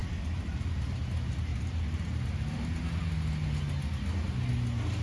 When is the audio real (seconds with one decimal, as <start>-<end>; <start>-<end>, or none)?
0.0-5.0